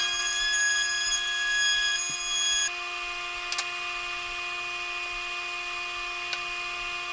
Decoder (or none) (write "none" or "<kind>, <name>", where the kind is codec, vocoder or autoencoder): none